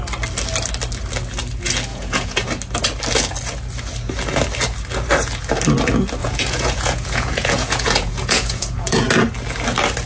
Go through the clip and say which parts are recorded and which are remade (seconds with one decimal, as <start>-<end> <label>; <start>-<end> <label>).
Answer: 0.0-1.9 recorded; 1.9-2.4 remade; 2.4-6.2 recorded; 6.2-9.1 remade; 9.1-10.1 recorded